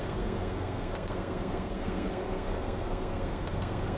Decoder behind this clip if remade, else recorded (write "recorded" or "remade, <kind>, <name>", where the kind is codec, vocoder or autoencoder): remade, codec, SNAC